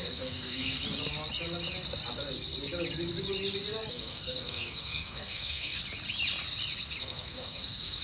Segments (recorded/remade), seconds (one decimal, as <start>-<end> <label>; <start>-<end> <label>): 0.0-0.8 remade; 0.8-3.9 recorded; 3.9-5.8 remade; 5.8-7.0 recorded; 7.0-8.0 remade

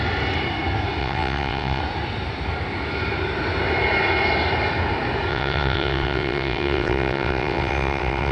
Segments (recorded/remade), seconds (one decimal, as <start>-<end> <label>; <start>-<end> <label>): 0.0-1.0 recorded; 1.0-1.8 remade; 1.8-5.3 recorded; 5.3-8.3 remade

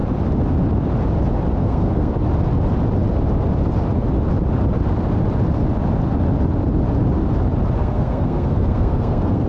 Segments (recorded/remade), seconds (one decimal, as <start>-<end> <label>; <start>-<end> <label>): 0.0-1.6 recorded; 1.6-2.1 remade; 2.1-7.8 recorded; 7.8-9.5 remade

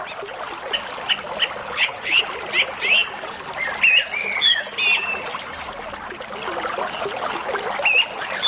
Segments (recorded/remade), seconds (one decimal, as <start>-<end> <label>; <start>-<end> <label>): 0.0-1.6 recorded; 1.6-2.2 remade; 2.2-8.5 recorded

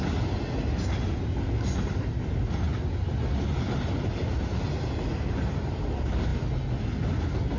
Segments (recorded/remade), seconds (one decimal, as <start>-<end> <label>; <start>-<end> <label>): 0.0-7.6 recorded

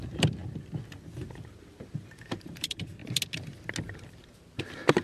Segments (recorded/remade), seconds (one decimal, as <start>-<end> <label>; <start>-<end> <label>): 0.0-3.0 remade; 3.0-3.8 recorded; 3.8-5.0 remade

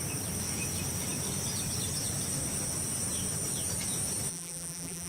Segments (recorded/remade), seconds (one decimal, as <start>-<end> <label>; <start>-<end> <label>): 0.0-4.3 recorded; 4.3-5.1 remade

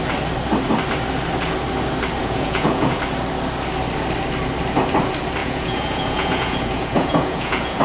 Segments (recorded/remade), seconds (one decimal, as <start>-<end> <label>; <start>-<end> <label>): 0.0-2.2 recorded; 2.2-3.0 remade; 3.0-5.4 recorded; 5.4-7.8 remade